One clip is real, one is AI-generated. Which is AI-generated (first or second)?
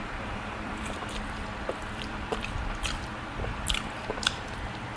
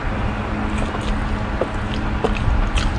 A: first